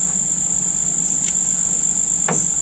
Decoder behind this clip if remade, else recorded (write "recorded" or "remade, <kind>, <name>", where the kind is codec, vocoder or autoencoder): recorded